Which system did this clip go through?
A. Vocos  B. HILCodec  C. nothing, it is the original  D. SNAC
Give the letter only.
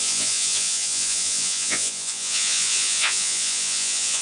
A